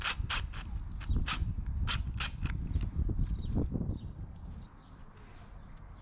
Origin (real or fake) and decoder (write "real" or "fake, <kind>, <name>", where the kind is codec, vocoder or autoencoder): real